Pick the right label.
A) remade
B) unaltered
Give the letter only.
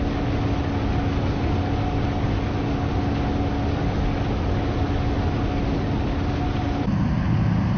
B